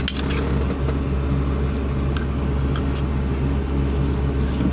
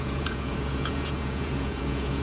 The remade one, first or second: second